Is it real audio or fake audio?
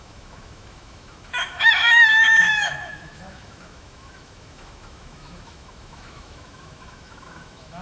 fake